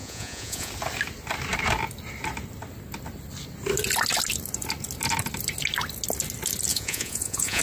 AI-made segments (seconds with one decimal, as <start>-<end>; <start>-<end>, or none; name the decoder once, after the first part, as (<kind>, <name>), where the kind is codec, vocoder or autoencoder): 0.0-0.7 (vocoder, Vocos); 6.7-7.6